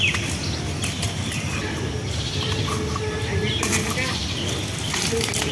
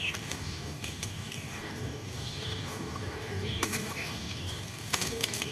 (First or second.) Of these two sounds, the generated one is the second